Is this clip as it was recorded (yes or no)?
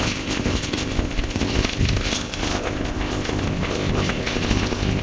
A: no